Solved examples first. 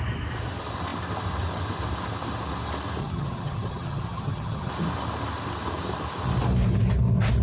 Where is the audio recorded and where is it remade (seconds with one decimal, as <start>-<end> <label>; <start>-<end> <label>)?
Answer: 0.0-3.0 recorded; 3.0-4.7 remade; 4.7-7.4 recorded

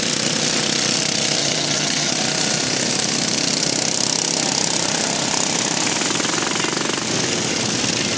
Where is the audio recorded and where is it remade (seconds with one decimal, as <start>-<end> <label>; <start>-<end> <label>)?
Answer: 0.0-1.4 recorded; 1.4-2.1 remade; 2.1-8.2 recorded

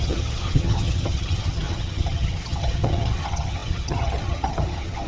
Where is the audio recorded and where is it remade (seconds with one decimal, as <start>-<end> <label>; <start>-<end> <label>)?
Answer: 0.0-5.1 remade

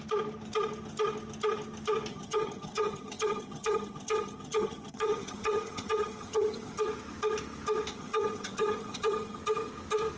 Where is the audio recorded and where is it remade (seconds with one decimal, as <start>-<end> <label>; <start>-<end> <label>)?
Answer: 0.0-2.1 recorded; 2.1-6.8 remade; 6.8-7.9 recorded; 7.9-9.4 remade; 9.4-10.2 recorded